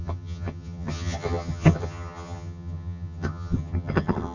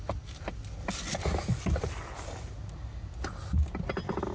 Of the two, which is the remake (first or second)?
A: first